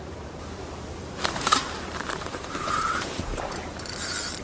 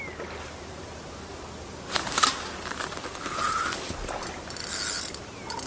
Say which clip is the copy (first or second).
first